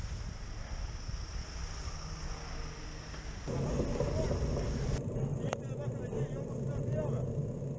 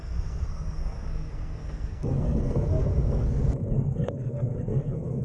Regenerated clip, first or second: second